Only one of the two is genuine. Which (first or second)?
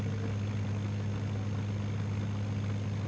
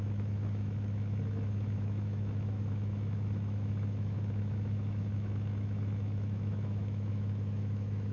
first